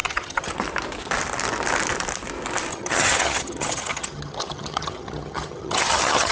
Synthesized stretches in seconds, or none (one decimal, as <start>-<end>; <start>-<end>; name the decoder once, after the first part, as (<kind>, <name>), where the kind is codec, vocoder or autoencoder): 0.0-0.5 (vocoder, HiFi-GAN); 2.7-6.3